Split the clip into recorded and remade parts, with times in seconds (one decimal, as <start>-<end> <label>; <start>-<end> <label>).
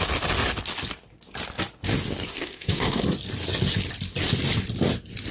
0.0-2.3 recorded; 2.3-3.0 remade; 3.0-5.3 recorded